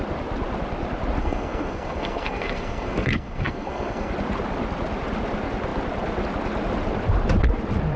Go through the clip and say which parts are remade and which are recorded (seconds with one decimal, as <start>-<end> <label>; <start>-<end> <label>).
0.0-1.2 recorded; 1.2-4.1 remade; 4.1-8.0 recorded